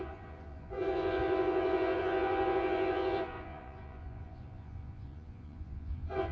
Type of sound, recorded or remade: remade